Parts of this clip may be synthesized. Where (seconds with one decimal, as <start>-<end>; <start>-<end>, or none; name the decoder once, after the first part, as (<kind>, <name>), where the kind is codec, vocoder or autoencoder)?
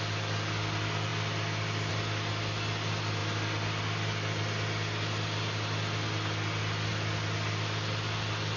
none